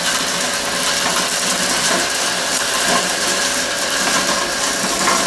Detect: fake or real real